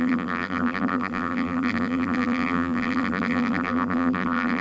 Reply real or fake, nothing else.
fake